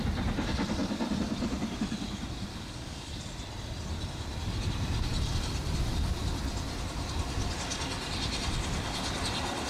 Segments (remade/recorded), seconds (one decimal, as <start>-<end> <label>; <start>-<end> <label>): 0.0-2.5 recorded; 2.5-3.2 remade; 3.2-9.7 recorded